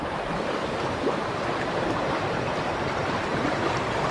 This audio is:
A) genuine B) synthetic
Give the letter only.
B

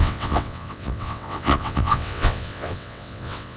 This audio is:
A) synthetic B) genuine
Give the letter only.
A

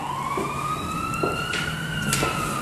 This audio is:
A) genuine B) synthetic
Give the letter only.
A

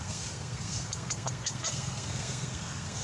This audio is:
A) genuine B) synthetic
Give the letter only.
B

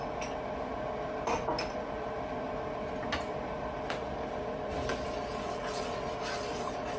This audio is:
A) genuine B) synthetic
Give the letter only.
A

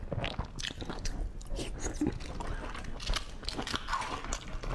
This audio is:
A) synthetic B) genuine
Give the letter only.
B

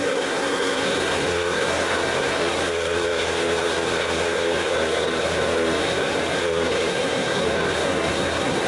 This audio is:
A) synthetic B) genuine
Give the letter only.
A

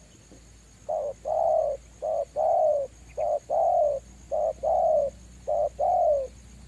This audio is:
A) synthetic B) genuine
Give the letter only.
B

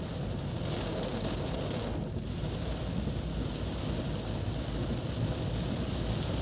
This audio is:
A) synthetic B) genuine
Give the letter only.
B